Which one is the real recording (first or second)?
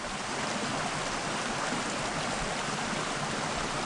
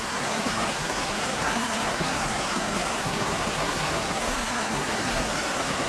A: first